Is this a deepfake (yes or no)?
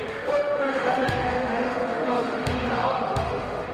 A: yes